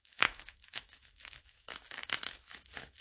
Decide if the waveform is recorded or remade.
remade